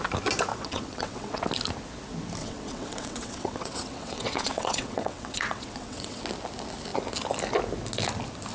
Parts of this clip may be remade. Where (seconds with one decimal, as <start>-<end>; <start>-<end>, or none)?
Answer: 0.5-1.4; 2.4-6.2